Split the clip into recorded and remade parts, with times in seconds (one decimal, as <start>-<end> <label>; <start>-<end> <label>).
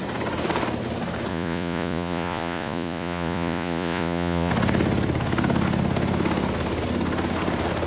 0.0-1.3 recorded; 1.3-4.5 remade; 4.5-7.9 recorded